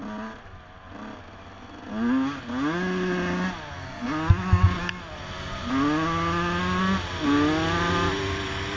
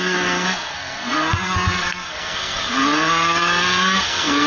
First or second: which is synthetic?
second